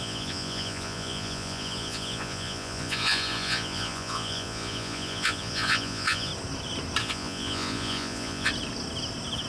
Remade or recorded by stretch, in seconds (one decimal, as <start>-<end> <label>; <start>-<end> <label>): 0.0-6.3 remade; 6.3-7.0 recorded; 7.0-8.5 remade; 8.5-9.5 recorded